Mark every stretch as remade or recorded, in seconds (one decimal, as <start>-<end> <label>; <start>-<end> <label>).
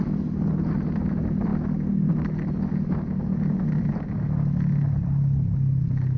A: 0.0-6.2 recorded